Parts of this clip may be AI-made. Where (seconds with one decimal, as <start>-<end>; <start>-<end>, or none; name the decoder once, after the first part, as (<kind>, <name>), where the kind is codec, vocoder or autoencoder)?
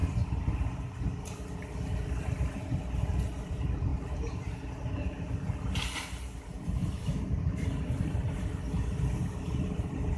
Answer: 6.8-7.7 (vocoder, BigVGAN v2)